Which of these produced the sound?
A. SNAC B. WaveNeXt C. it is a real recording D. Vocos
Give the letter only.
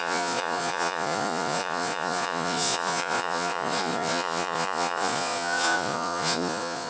D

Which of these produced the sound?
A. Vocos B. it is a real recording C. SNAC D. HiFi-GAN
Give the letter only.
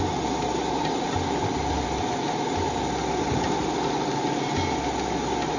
B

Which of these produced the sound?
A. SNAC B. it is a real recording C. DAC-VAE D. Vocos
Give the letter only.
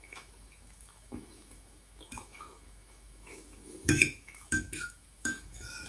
C